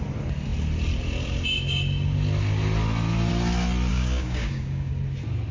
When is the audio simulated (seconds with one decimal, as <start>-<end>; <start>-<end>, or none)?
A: 3.9-4.9